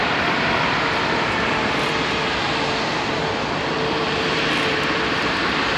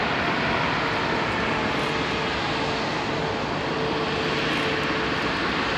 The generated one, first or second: first